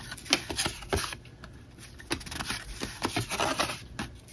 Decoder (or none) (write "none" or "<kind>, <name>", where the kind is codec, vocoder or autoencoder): none